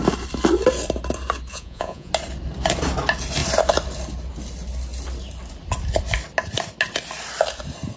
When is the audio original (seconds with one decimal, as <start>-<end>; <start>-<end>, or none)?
0.0-1.5; 2.1-8.0